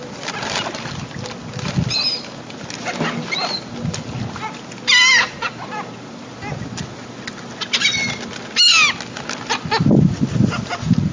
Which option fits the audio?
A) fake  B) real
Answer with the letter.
B